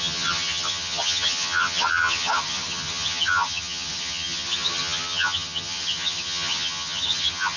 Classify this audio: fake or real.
fake